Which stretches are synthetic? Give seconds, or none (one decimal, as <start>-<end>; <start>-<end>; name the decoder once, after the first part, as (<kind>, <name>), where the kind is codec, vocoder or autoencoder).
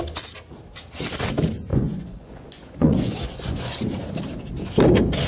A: 1.7-3.7 (vocoder, Vocos)